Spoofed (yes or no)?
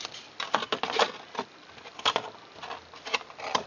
no